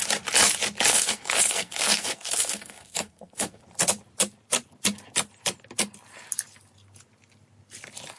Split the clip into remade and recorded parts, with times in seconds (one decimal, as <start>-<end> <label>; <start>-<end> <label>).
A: 0.0-0.9 recorded; 0.9-3.6 remade; 3.6-8.2 recorded